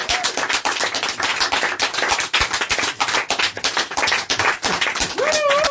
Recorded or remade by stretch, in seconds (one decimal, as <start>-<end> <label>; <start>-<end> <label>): 0.0-5.7 recorded